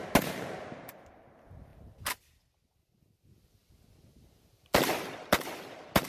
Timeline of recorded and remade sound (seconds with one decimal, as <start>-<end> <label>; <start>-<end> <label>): 0.0-6.1 recorded